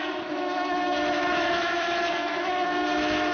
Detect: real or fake fake